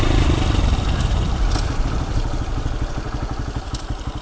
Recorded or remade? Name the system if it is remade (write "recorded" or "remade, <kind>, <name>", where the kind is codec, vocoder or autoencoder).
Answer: recorded